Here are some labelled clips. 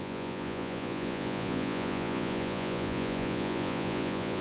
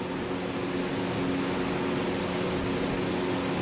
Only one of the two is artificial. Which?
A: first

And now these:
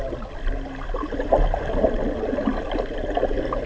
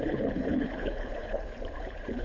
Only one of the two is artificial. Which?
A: second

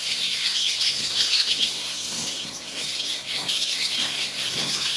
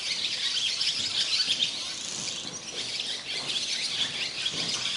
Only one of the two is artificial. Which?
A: first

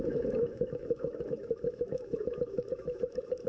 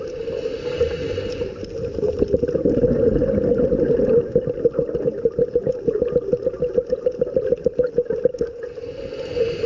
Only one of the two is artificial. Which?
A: first